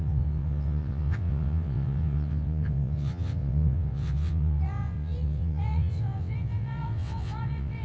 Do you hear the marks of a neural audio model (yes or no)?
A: yes